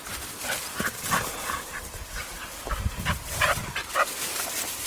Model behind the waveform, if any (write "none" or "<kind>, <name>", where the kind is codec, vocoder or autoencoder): none